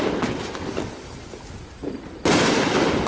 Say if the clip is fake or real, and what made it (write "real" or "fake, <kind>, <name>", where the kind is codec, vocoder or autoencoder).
real